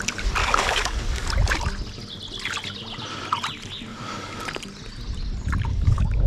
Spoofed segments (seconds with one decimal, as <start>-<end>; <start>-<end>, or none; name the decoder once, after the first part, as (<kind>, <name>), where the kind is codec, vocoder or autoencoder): 0.4-1.3 (codec, DAC); 3.9-4.4; 5.7-6.3